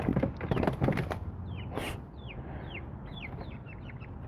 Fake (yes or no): no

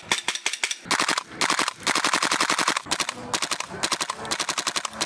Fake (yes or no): no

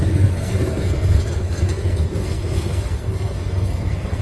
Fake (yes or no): yes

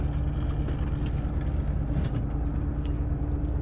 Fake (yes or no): no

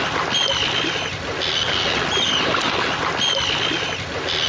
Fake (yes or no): no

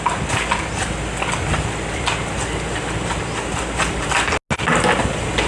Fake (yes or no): no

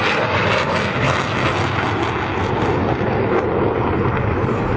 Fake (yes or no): no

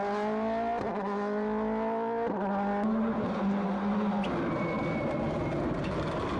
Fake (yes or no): no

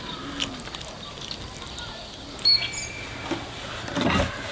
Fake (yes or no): no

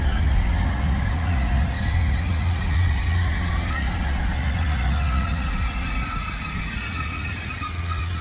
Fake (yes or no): yes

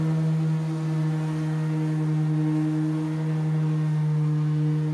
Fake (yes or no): no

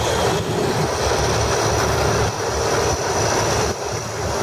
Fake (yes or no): no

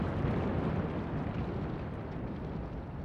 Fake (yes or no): yes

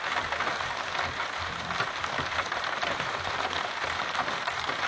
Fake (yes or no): no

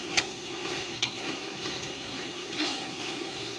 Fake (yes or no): yes